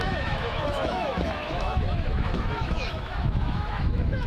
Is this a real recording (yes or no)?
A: no